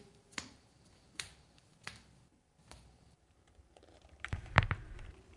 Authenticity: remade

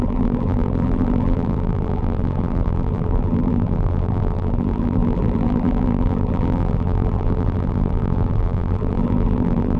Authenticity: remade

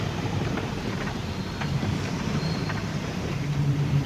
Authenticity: remade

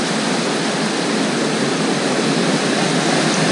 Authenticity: recorded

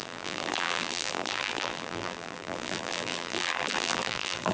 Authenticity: remade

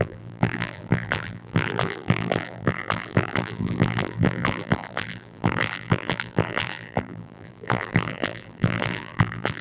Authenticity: remade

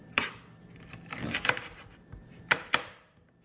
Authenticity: remade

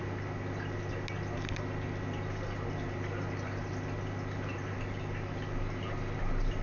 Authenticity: recorded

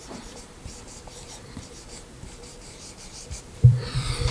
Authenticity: remade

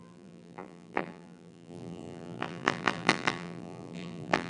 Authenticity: remade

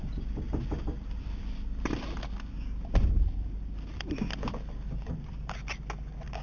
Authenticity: recorded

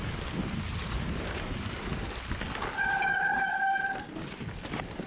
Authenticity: recorded